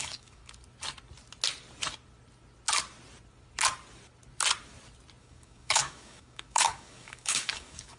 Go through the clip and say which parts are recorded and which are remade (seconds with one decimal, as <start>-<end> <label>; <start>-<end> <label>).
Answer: 0.0-0.4 remade; 0.4-5.2 recorded; 5.2-8.0 remade